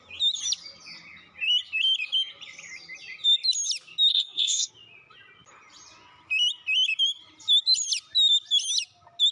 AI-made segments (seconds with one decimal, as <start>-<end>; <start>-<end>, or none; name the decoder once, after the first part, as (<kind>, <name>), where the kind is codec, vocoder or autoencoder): 4.1-4.7 (codec, SNAC)